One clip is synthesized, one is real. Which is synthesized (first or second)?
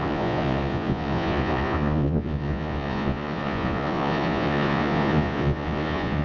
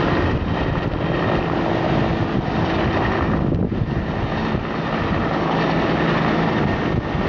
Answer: first